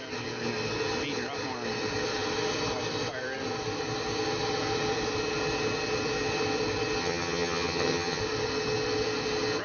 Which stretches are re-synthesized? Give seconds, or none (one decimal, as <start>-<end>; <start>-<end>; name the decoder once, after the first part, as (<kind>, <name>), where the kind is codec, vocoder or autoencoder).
7.0-8.2 (vocoder, HiFi-GAN)